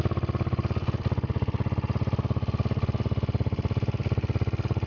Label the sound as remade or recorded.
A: recorded